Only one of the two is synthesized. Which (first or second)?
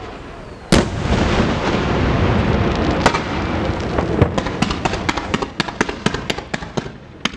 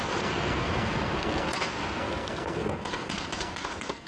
second